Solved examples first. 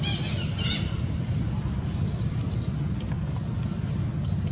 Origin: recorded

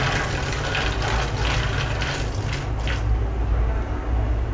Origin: recorded